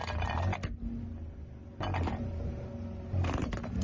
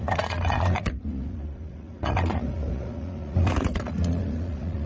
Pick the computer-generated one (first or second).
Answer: second